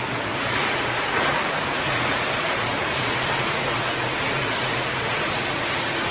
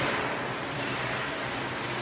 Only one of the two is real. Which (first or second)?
second